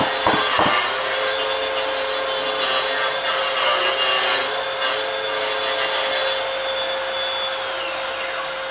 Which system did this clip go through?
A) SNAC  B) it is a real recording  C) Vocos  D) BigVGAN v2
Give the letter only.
B